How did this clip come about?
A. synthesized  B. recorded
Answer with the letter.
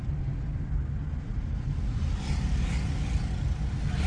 B